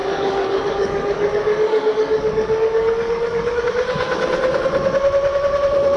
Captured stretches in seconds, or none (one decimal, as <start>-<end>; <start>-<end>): 3.6-6.0